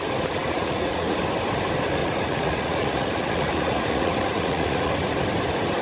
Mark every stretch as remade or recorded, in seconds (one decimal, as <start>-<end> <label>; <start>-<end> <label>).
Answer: 0.0-0.4 recorded; 0.4-1.2 remade; 1.2-2.0 recorded; 2.0-4.9 remade; 4.9-5.8 recorded